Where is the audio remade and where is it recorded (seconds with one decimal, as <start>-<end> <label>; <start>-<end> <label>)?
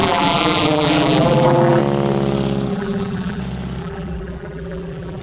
0.0-1.8 remade; 1.8-2.7 recorded; 2.7-3.4 remade; 3.4-3.8 recorded; 3.8-5.2 remade